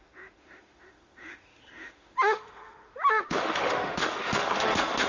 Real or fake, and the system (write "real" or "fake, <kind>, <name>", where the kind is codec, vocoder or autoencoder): fake, autoencoder, DAC-VAE